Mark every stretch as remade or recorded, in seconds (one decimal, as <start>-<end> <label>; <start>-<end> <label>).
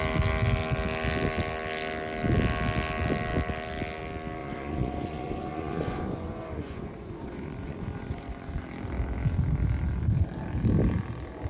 0.0-4.4 recorded; 4.4-8.6 remade; 8.6-11.5 recorded